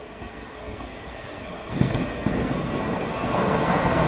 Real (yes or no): no